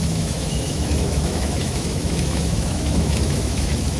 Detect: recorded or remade remade